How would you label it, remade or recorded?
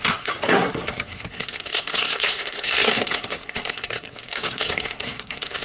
remade